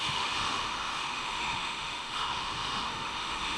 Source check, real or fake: fake